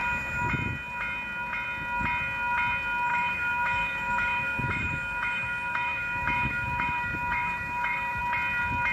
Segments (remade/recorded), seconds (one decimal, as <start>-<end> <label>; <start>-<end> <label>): 0.0-0.5 remade; 0.5-3.1 recorded; 3.1-8.2 remade; 8.2-8.9 recorded